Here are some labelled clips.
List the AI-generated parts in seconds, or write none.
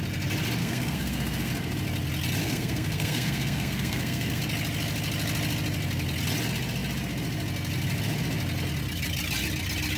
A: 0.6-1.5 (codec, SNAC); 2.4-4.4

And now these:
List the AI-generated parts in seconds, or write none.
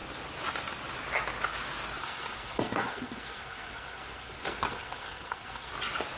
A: 2.0-5.7 (codec, SNAC)